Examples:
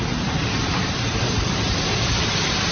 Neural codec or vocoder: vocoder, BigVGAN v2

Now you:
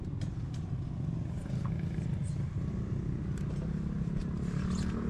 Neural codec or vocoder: none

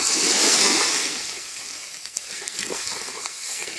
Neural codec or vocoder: codec, SNAC